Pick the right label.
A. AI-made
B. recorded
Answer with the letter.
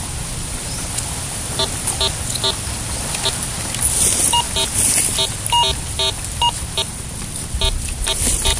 B